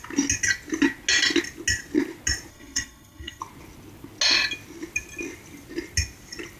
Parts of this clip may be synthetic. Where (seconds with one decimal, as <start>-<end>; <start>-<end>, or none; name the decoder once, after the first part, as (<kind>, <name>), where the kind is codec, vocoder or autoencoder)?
2.5-3.4 (codec, SNAC)